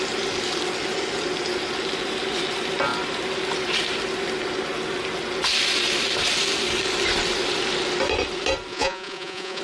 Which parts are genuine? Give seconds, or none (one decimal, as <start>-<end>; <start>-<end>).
0.0-8.7